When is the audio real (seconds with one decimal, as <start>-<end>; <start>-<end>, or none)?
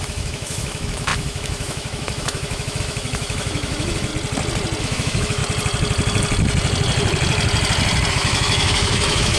4.1-4.8; 5.4-8.1